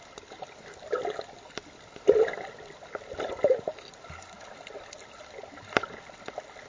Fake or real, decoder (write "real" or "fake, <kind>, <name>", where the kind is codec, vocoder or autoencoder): real